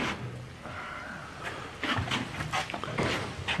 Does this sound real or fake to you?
real